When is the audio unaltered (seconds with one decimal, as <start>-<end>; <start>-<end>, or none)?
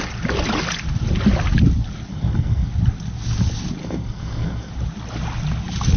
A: 0.0-2.1; 2.7-3.8; 4.7-6.0